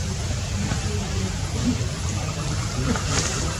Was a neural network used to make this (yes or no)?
no